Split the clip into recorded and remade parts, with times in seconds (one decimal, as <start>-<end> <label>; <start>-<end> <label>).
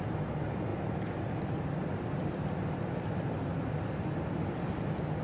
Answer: 0.0-5.2 recorded